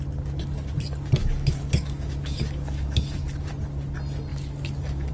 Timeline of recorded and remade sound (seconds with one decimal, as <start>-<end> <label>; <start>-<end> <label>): 0.0-1.2 recorded; 1.2-3.5 remade; 3.5-4.3 recorded; 4.3-5.1 remade